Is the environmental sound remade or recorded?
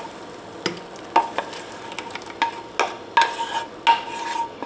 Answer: recorded